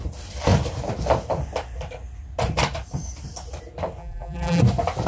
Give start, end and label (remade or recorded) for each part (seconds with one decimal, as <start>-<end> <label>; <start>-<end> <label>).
0.0-4.0 recorded; 4.0-4.6 remade; 4.6-5.1 recorded